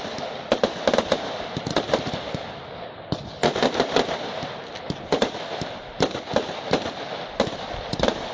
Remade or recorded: recorded